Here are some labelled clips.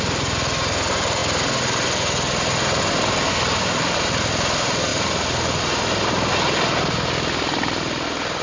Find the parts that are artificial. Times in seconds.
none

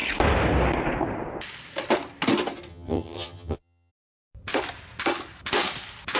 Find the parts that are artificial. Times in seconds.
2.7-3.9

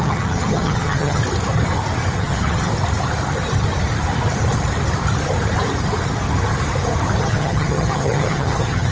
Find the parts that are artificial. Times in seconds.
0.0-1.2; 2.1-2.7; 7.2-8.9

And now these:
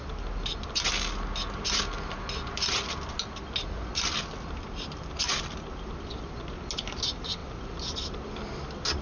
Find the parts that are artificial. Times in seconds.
none

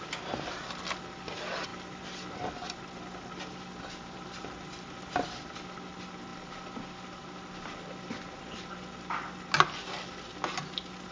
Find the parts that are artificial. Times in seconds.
none

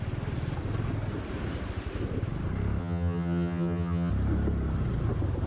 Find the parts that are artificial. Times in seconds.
2.8-4.1

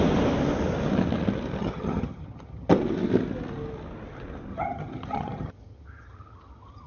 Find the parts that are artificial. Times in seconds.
1.6-2.7; 4.5-6.9

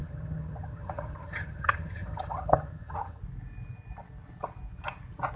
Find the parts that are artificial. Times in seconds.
0.0-3.2